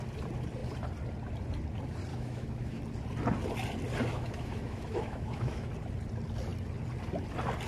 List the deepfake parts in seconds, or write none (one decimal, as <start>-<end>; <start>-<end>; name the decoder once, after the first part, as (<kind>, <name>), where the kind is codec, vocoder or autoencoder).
2.1-2.8 (autoencoder, DAC-VAE); 4.1-5.7